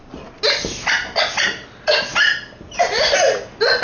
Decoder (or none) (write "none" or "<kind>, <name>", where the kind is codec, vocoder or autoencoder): none